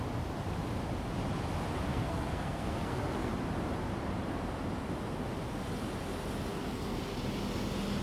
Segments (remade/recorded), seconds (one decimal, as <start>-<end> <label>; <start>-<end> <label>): 0.0-1.9 recorded; 1.9-3.3 remade; 3.3-6.5 recorded; 6.5-7.0 remade; 7.0-8.0 recorded